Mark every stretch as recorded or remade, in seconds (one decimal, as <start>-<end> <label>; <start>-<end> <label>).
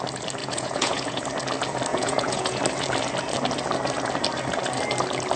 0.0-0.4 recorded; 0.4-1.2 remade; 1.2-1.9 recorded; 1.9-2.6 remade; 2.6-5.4 recorded